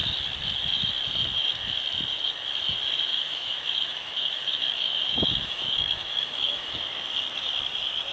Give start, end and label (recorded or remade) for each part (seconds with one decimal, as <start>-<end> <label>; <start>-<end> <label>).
0.0-3.1 recorded; 3.1-6.8 remade; 6.8-8.1 recorded